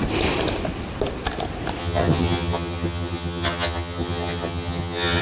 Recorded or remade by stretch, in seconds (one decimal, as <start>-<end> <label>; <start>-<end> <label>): 0.0-1.8 recorded; 1.8-5.2 remade